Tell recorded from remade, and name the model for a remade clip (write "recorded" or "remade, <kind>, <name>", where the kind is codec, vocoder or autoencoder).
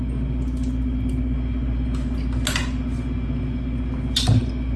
recorded